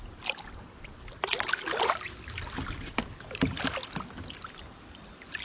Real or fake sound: real